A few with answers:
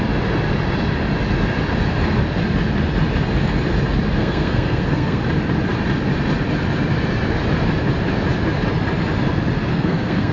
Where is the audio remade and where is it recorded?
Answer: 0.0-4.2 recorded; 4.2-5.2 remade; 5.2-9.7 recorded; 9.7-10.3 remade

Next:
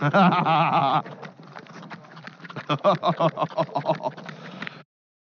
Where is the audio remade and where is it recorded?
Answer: 0.0-0.8 recorded; 0.8-3.9 remade; 3.9-5.2 recorded

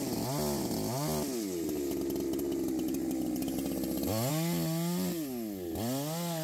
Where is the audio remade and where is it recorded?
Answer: 0.0-6.4 recorded

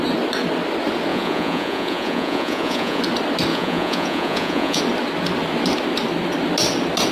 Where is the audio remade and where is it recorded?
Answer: 0.0-1.1 recorded; 1.1-3.0 remade; 3.0-3.5 recorded; 3.5-4.8 remade; 4.8-7.1 recorded

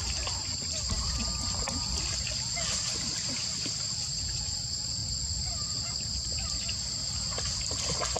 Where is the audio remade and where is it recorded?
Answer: 0.0-8.2 recorded

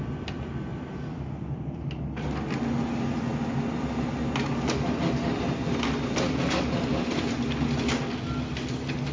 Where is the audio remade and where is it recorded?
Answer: 0.0-9.1 recorded

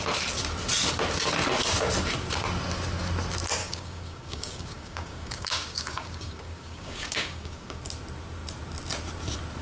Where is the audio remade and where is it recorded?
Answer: 0.0-3.6 recorded; 3.6-7.8 remade; 7.8-9.6 recorded